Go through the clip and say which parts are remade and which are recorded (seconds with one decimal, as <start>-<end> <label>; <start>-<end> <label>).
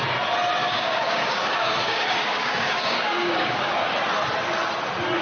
0.0-0.6 recorded; 0.6-3.7 remade; 3.7-5.2 recorded